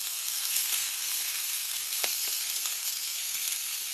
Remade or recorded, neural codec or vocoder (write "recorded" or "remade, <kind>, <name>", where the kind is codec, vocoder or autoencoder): remade, codec, SNAC